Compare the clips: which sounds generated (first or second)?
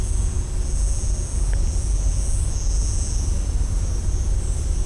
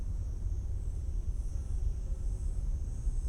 second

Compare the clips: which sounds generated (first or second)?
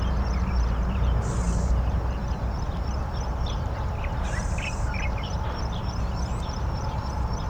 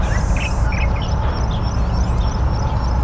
first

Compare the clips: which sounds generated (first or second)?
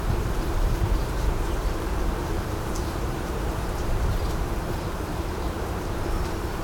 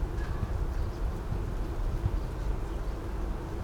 first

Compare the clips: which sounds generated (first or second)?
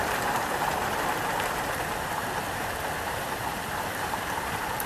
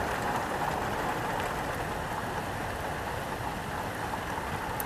first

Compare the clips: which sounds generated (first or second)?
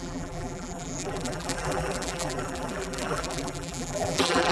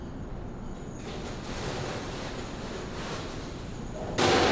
first